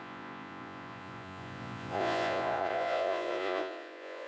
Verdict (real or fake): fake